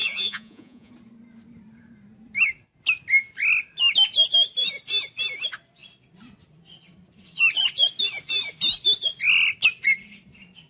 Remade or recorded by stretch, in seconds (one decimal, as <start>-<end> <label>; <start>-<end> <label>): 0.0-0.9 remade; 0.9-10.7 recorded